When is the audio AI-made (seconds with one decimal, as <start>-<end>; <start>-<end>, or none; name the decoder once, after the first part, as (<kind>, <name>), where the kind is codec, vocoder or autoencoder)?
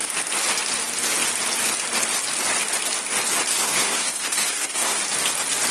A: 3.5-5.0 (codec, SNAC)